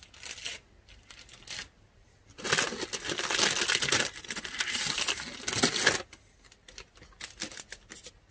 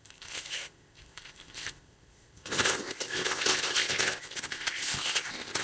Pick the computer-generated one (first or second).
second